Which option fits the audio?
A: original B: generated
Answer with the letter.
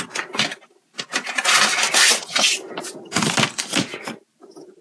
A